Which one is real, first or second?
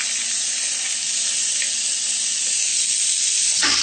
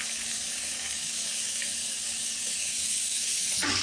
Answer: first